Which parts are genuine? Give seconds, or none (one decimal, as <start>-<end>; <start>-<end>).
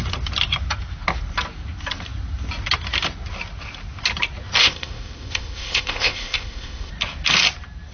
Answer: 0.0-4.6; 6.9-7.9